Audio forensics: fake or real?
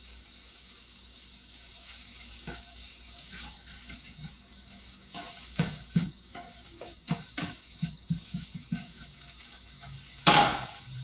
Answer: fake